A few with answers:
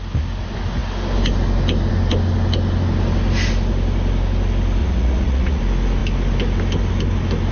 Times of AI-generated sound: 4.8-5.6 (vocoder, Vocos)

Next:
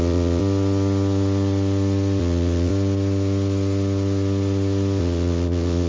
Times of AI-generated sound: 0.0-0.4 (vocoder, Vocos); 2.2-2.7; 5.0-5.9

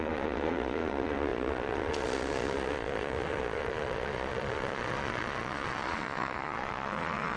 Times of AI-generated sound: 0.0-7.4 (vocoder, Vocos)

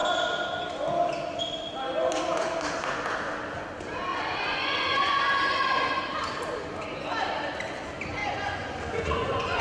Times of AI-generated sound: 4.1-6.0 (vocoder, Vocos); 8.2-9.6

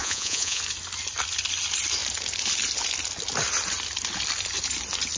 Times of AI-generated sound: 0.0-0.6 (vocoder, Vocos)

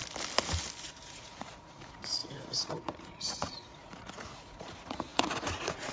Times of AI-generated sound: 0.8-5.9 (vocoder, Vocos)